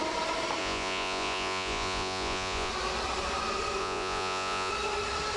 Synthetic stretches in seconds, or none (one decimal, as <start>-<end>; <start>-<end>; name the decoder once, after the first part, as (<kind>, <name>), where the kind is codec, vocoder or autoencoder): 0.6-2.7 (vocoder, Vocos); 3.8-4.7